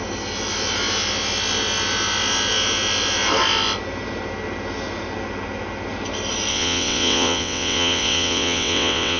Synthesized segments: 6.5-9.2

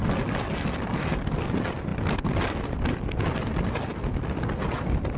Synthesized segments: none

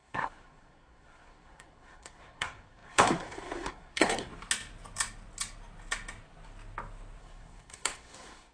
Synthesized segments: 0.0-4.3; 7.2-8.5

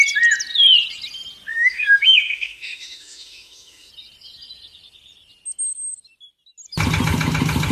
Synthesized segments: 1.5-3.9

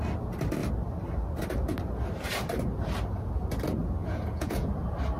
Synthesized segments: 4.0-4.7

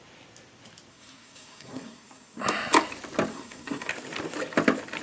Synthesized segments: 0.9-2.4; 3.3-3.9

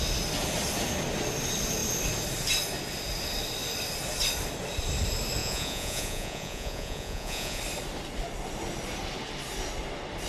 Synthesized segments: 5.4-7.6

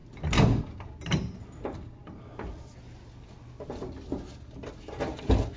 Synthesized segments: none